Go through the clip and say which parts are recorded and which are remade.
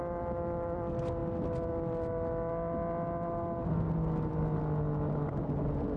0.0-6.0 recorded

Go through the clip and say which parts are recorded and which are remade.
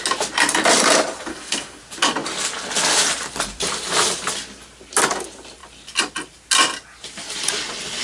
0.0-1.3 recorded; 1.3-1.8 remade; 1.8-8.0 recorded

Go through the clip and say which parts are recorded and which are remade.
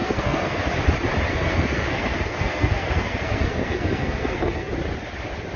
0.0-0.8 remade; 0.8-1.3 recorded; 1.3-4.7 remade; 4.7-5.6 recorded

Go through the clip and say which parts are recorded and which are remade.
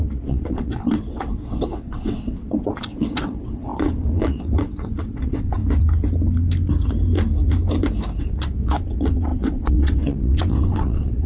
0.0-5.6 remade; 5.6-8.2 recorded; 8.2-11.3 remade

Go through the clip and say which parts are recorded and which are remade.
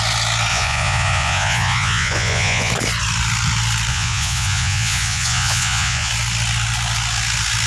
0.0-0.5 recorded; 0.5-2.7 remade; 2.7-3.9 recorded; 3.9-6.1 remade; 6.1-7.7 recorded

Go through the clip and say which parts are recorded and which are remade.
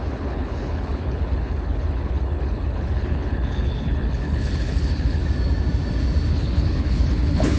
0.0-5.2 remade; 5.2-6.3 recorded; 6.3-7.6 remade